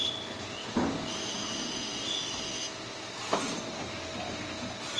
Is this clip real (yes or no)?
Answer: yes